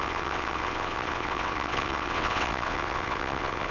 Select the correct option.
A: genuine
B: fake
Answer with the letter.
B